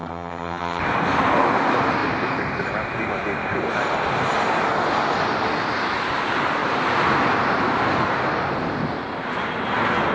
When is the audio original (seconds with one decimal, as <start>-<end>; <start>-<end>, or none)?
0.8-10.1